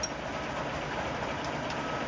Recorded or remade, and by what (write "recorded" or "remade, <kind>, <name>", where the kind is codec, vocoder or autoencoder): recorded